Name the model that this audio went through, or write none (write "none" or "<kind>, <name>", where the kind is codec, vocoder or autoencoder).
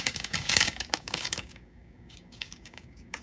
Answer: codec, DAC